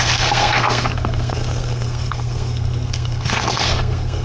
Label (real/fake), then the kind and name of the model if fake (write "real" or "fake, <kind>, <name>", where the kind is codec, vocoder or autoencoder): fake, codec, SNAC